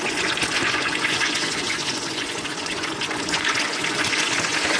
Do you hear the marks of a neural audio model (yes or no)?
yes